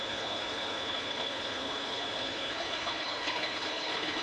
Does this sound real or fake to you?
fake